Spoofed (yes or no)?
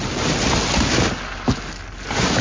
no